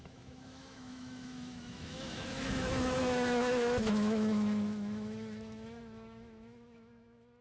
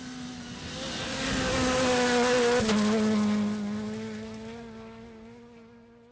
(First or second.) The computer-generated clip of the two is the first